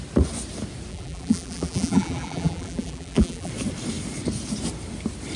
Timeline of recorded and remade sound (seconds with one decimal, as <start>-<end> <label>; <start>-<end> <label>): 0.0-0.9 recorded; 0.9-3.5 remade; 3.5-5.4 recorded